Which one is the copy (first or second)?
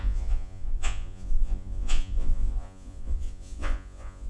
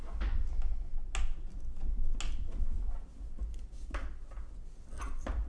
first